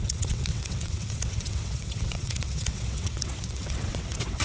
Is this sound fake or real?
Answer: fake